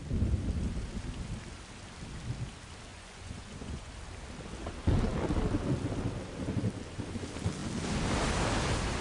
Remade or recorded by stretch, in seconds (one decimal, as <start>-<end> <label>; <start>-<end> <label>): 0.0-2.9 recorded; 2.9-3.9 remade; 3.9-9.0 recorded